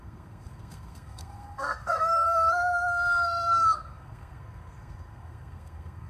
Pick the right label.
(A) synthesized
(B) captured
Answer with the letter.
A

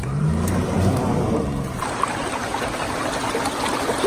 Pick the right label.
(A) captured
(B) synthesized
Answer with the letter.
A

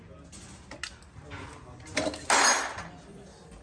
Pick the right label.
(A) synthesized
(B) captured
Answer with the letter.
B